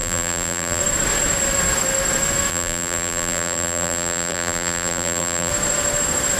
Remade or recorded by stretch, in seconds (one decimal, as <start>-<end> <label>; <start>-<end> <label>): 0.0-0.8 remade; 0.8-2.5 recorded; 2.5-5.5 remade; 5.5-6.4 recorded